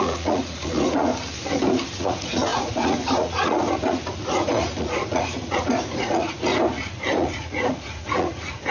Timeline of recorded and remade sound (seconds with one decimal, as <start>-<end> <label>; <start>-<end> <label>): 0.0-1.1 remade; 1.1-2.0 recorded; 2.0-6.5 remade; 6.5-7.1 recorded; 7.1-8.7 remade